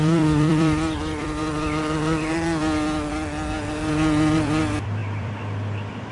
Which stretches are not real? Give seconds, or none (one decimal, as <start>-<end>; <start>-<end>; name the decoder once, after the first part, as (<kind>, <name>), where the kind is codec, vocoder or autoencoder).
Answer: 0.0-1.4 (vocoder, BigVGAN v2); 3.9-6.1